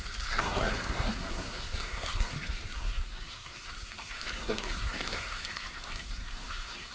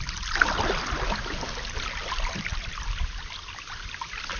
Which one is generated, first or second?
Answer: first